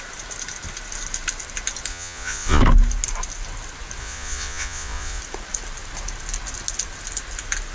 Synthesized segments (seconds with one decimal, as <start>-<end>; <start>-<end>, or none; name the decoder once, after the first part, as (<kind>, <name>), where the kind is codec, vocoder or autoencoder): 1.9-2.6 (vocoder, Vocos); 4.0-5.2